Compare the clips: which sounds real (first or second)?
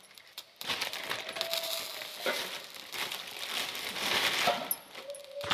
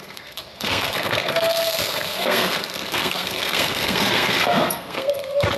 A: first